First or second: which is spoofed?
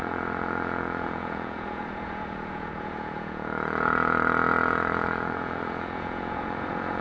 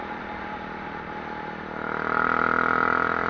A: first